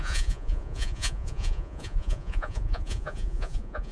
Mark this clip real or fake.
fake